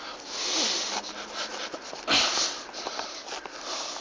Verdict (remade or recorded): recorded